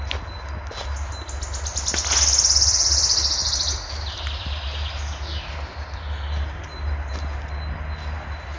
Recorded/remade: recorded